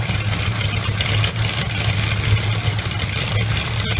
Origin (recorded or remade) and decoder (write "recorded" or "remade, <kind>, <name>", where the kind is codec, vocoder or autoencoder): recorded